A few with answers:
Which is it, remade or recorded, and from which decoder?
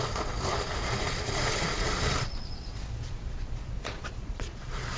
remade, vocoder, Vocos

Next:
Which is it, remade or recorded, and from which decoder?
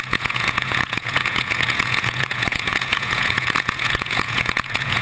remade, vocoder, Vocos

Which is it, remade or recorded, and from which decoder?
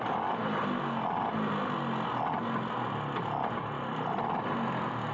recorded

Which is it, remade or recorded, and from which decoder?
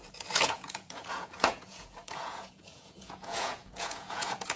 remade, vocoder, Vocos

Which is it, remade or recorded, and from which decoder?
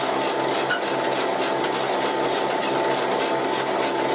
recorded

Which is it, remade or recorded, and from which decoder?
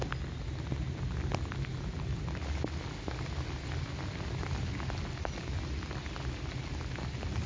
recorded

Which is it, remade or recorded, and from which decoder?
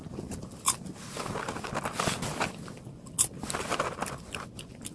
recorded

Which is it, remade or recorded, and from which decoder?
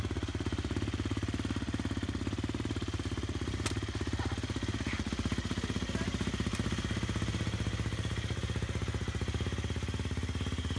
recorded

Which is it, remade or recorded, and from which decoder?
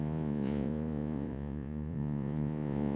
remade, vocoder, Vocos